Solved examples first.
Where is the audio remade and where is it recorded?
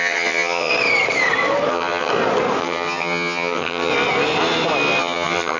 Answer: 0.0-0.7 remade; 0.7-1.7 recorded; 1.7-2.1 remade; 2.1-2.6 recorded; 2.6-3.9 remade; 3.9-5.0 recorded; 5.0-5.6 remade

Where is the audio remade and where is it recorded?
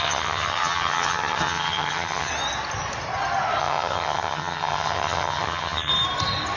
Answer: 0.0-2.3 remade; 2.3-3.6 recorded; 3.6-5.9 remade; 5.9-6.6 recorded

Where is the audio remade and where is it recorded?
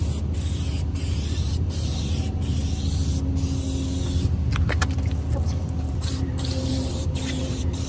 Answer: 0.0-0.7 recorded; 0.7-2.6 remade; 2.6-5.3 recorded; 5.3-7.9 remade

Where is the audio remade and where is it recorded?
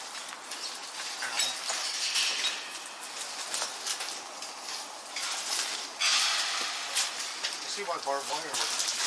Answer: 0.0-9.1 recorded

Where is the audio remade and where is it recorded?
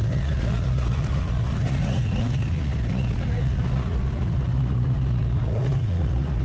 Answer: 0.0-6.4 remade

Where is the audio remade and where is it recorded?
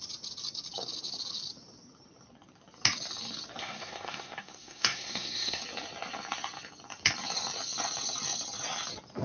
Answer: 0.0-3.6 recorded; 3.6-5.6 remade; 5.6-9.2 recorded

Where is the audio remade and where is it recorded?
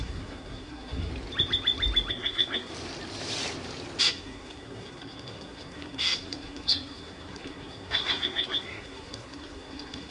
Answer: 0.0-1.1 remade; 1.1-2.1 recorded; 2.1-2.7 remade; 2.7-4.0 recorded; 4.0-10.1 remade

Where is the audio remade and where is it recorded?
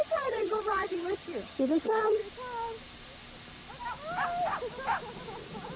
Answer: 0.0-2.2 remade; 2.2-5.8 recorded